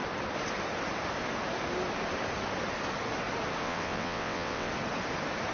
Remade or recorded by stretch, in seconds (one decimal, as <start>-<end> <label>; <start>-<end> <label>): 0.0-3.6 recorded; 3.6-4.7 remade; 4.7-5.5 recorded